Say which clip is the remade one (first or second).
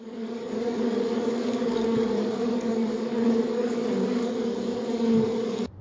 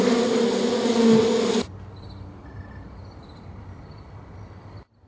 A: first